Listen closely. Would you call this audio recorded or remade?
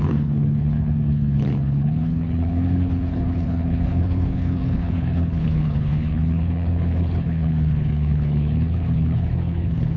remade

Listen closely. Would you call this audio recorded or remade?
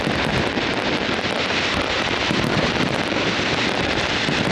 remade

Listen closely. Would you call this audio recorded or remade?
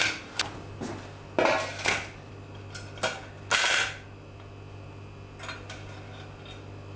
recorded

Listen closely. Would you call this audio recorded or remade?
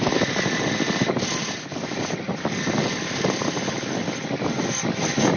recorded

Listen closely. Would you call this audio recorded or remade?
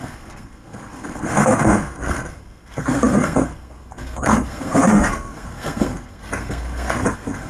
remade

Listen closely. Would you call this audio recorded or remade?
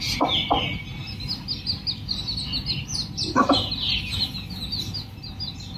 recorded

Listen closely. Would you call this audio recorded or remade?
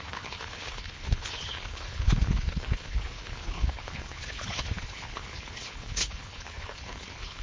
remade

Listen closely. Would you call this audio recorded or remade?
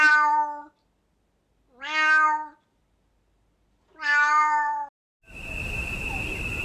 recorded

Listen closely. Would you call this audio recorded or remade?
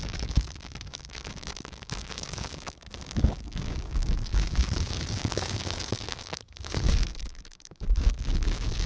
remade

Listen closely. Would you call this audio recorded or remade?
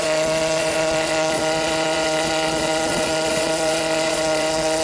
remade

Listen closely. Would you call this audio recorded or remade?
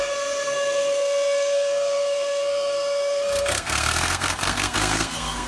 remade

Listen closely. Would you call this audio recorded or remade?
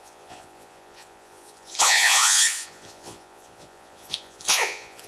remade